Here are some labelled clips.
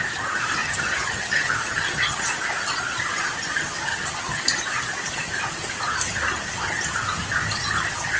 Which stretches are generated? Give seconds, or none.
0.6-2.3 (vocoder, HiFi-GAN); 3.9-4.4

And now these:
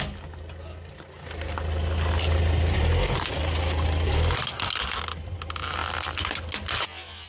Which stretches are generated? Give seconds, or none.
none